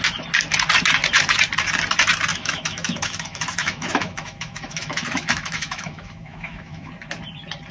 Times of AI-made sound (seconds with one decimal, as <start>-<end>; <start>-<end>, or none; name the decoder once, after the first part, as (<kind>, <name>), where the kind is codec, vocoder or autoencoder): 2.3-6.9 (autoencoder, DAC-VAE)